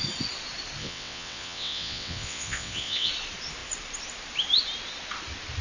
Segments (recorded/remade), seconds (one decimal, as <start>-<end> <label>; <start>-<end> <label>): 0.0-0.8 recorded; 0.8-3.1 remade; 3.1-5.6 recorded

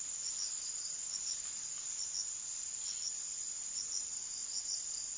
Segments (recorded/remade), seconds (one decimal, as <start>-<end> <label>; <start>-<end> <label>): 0.0-5.2 recorded

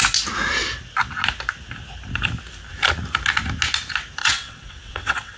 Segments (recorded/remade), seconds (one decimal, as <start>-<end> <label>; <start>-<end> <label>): 0.0-4.2 recorded; 4.2-5.4 remade